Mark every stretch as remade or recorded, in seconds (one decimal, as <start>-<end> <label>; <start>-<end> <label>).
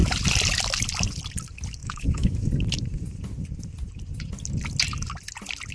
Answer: 0.0-1.8 recorded; 1.8-2.5 remade; 2.5-5.7 recorded